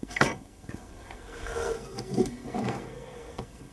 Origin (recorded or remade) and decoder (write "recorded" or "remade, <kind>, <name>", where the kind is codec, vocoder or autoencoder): remade, codec, SNAC